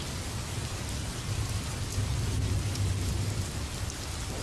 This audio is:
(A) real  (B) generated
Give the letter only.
A